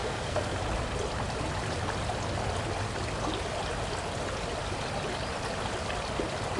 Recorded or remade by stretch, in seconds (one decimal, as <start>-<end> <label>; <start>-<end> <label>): 0.0-0.6 remade; 0.6-6.6 recorded